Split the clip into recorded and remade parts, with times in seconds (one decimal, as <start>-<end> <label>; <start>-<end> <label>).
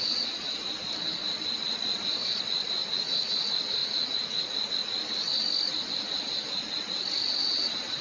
0.0-2.8 recorded; 2.8-3.3 remade; 3.3-3.8 recorded; 3.8-4.7 remade; 4.7-8.0 recorded